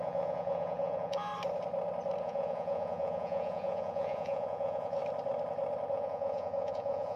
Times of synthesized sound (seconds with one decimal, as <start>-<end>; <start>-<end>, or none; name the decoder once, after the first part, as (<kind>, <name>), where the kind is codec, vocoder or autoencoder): 0.0-1.3 (vocoder, Vocos); 2.2-5.0; 5.9-7.2